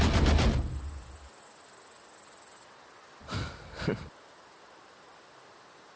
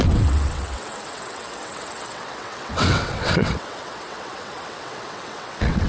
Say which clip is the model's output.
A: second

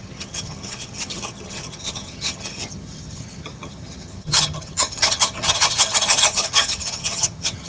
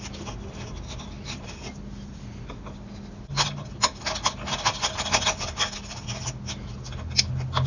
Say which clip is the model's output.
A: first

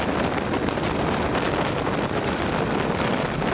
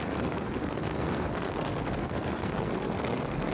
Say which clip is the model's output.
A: second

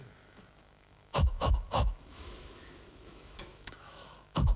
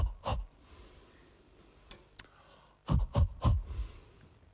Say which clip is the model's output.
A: first